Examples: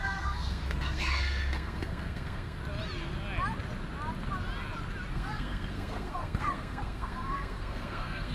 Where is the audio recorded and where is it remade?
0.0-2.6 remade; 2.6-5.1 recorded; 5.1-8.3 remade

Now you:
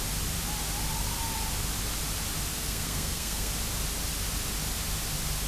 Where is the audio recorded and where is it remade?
0.0-2.5 recorded; 2.5-3.5 remade; 3.5-5.5 recorded